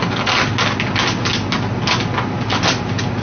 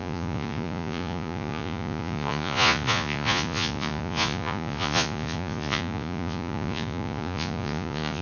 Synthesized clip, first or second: second